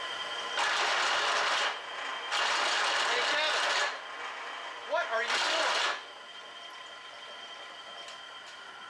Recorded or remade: recorded